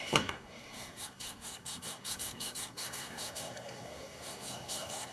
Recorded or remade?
remade